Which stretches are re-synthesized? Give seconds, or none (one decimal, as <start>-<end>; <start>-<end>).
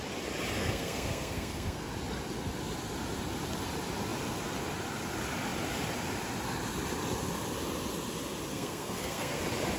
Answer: 0.6-1.9; 8.5-9.4